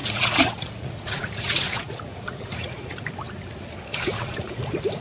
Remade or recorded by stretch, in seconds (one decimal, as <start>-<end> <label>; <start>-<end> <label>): 0.0-3.0 remade; 3.0-3.9 recorded; 3.9-4.5 remade; 4.5-5.0 recorded